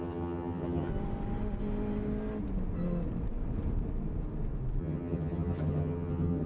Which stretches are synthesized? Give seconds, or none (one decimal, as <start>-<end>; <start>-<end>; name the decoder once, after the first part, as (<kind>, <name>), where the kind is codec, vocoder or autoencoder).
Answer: 0.0-0.9 (vocoder, HiFi-GAN); 4.8-6.5